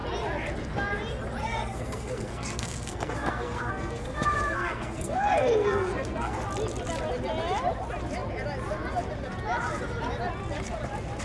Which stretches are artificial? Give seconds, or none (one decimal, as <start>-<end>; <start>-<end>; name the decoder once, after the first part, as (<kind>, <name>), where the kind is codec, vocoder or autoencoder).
1.4-6.4 (codec, SNAC)